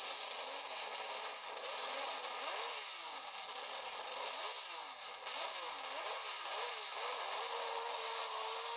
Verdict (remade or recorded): recorded